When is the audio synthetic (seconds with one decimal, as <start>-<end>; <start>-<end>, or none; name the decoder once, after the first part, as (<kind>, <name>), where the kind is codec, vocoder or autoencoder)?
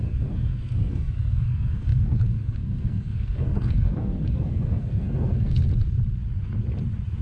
0.0-5.6 (codec, SNAC)